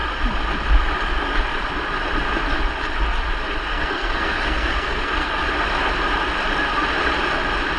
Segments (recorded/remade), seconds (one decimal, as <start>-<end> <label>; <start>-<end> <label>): 0.0-3.7 recorded; 3.7-5.3 remade; 5.3-7.8 recorded